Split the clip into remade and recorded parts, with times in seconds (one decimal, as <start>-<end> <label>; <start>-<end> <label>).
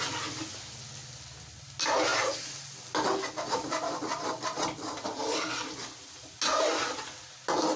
0.0-7.8 recorded